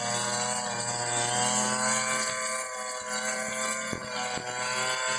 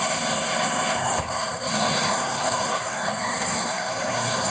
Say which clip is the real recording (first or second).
first